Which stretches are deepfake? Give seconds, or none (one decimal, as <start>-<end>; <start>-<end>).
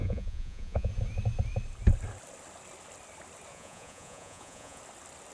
0.0-0.9; 3.5-4.8